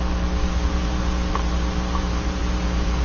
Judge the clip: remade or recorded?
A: remade